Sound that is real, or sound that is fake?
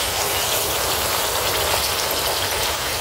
real